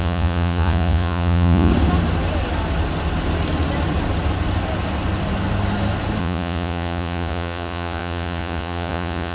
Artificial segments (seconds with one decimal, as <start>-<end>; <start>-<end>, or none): 0.0-1.7; 6.2-9.3